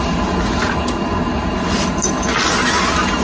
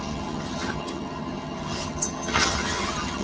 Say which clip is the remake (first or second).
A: second